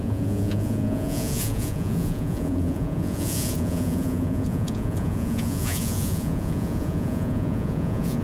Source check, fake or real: fake